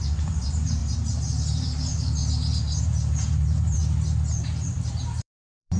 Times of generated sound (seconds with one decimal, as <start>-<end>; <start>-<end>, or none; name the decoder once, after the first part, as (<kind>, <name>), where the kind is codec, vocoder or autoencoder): 0.0-0.8 (vocoder, BigVGAN v2); 1.3-2.2; 2.8-3.8; 4.4-5.8